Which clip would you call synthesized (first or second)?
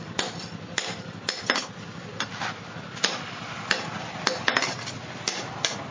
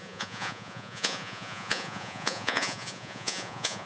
second